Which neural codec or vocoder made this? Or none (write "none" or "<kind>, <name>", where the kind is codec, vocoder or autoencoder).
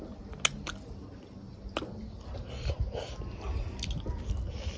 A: none